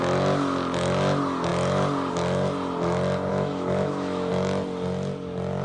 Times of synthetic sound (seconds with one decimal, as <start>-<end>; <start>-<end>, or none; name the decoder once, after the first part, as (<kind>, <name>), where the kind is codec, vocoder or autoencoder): 3.3-4.3 (autoencoder, DAC-VAE)